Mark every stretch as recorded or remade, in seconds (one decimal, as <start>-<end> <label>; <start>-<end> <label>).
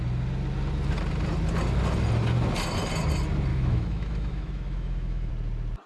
0.0-3.5 recorded; 3.5-5.3 remade; 5.3-5.9 recorded